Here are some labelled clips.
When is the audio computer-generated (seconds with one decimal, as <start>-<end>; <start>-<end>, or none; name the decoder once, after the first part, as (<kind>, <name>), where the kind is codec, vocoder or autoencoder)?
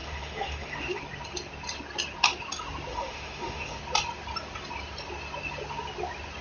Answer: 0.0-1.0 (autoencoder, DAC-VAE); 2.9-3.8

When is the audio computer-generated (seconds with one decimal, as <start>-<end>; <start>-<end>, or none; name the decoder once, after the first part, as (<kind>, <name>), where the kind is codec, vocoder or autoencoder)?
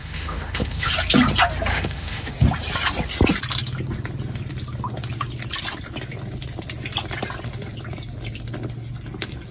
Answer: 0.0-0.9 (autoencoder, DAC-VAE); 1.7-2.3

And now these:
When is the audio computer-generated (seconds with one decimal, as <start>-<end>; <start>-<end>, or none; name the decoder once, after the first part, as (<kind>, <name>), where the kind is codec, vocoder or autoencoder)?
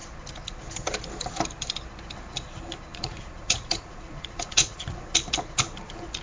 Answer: 2.9-5.0 (vocoder, Vocos)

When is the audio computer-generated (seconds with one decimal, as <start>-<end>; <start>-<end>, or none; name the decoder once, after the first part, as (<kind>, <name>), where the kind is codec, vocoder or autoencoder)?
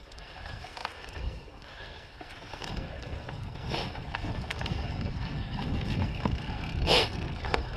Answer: 0.0-7.8 (codec, SNAC)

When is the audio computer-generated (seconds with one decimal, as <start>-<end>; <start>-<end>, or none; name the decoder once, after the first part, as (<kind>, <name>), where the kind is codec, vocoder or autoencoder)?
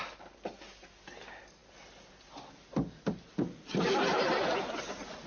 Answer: none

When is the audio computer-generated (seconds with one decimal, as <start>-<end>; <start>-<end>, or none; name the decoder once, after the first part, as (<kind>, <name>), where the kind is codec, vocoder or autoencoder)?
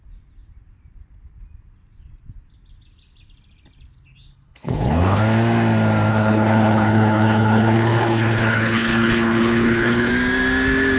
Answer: 4.3-5.2 (codec, HILCodec); 6.1-10.1